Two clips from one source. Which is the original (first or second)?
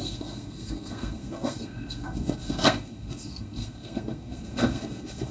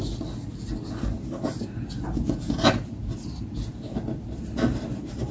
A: second